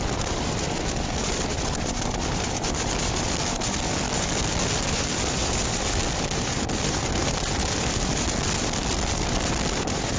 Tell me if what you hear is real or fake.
real